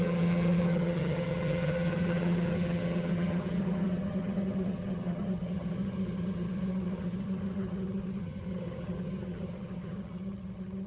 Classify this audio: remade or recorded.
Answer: remade